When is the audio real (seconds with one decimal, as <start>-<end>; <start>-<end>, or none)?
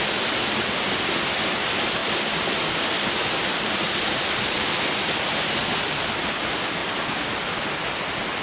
0.0-8.4